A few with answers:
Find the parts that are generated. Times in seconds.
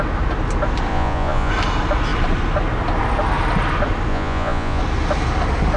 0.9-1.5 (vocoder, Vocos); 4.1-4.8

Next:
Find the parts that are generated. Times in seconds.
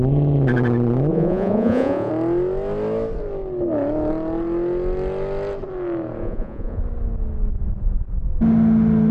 1.1-2.1 (vocoder, Vocos); 6.2-6.8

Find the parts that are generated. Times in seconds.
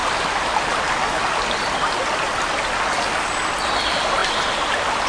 none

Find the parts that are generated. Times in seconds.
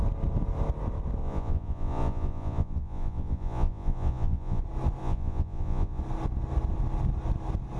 1.2-4.6 (vocoder, Vocos); 5.0-6.0